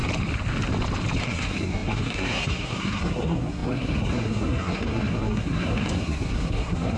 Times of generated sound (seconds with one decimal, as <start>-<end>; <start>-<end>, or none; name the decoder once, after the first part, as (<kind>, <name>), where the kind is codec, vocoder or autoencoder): 1.2-7.0 (codec, SNAC)